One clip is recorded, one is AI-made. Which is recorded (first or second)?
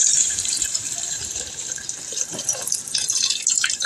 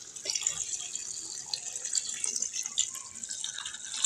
second